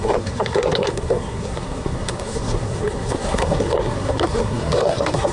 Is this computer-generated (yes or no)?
yes